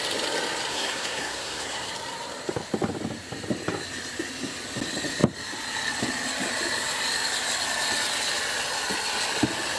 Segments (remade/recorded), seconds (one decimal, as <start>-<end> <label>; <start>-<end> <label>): 0.0-0.7 recorded; 0.7-1.9 remade; 1.9-9.8 recorded